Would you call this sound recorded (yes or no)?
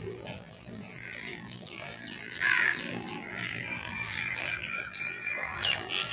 no